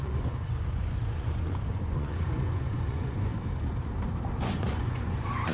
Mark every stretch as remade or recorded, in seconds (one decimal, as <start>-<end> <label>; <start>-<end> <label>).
0.0-3.3 remade; 3.3-4.4 recorded; 4.4-5.5 remade